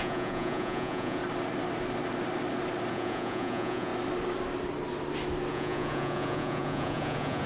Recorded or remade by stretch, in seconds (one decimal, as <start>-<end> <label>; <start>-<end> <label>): 0.0-1.2 remade; 1.2-2.9 recorded; 2.9-3.9 remade; 3.9-5.5 recorded; 5.5-7.5 remade